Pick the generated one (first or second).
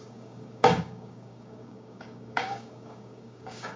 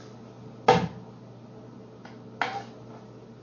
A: first